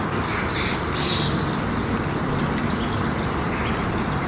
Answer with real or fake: real